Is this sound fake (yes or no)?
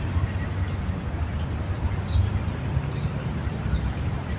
no